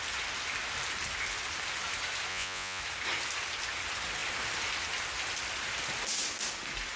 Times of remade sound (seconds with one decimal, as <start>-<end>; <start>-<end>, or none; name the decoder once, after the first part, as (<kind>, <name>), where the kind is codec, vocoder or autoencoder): 2.3-2.8 (vocoder, Vocos)